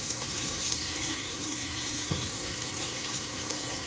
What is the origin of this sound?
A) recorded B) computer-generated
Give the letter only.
B